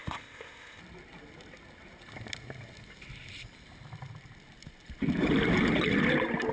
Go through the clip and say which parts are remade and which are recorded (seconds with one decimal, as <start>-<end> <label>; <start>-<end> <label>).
0.0-0.8 remade; 0.8-6.5 recorded